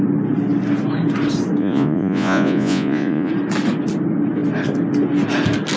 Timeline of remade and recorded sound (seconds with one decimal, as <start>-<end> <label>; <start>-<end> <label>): 0.0-1.6 recorded; 1.6-3.3 remade; 3.3-5.8 recorded

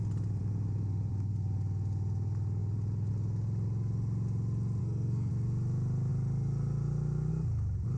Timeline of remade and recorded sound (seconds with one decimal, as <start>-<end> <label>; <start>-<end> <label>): 0.0-4.8 recorded; 4.8-5.3 remade; 5.3-8.0 recorded

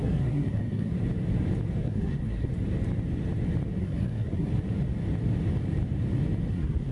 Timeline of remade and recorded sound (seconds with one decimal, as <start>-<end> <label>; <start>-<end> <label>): 0.0-0.9 remade; 0.9-1.8 recorded; 1.8-2.5 remade; 2.5-3.8 recorded; 3.8-4.5 remade; 4.5-6.5 recorded; 6.5-6.9 remade

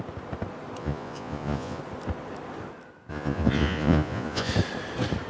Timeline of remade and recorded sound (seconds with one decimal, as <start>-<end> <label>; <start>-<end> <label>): 0.0-0.8 recorded; 0.8-1.8 remade; 1.8-3.1 recorded; 3.1-4.5 remade; 4.5-5.3 recorded

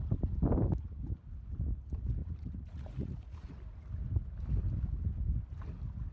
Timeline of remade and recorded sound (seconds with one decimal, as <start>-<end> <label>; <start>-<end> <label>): 0.0-2.2 recorded; 2.2-3.6 remade; 3.6-6.1 recorded

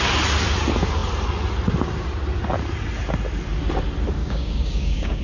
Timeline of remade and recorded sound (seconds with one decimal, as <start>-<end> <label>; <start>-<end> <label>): 0.0-4.2 recorded; 4.2-5.2 remade

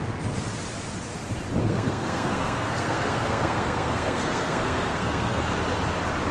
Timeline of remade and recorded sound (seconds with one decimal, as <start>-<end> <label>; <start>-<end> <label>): 0.0-1.6 recorded; 1.6-5.4 remade; 5.4-6.3 recorded